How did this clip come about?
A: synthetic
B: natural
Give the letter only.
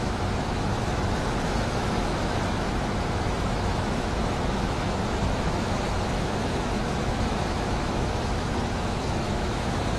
A